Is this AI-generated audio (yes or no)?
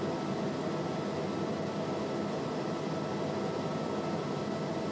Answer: no